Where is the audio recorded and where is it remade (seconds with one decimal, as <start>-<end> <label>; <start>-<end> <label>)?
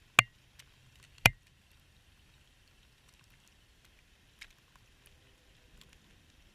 0.0-0.8 recorded; 0.8-3.8 remade; 3.8-6.5 recorded